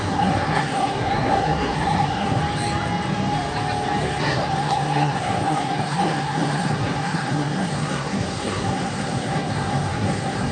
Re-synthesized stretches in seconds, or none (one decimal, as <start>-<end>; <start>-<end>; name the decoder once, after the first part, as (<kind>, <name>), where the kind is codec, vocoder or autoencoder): 0.0-2.4 (codec, SNAC); 4.2-10.5